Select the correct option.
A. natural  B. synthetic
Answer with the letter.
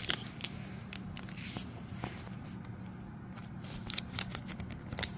A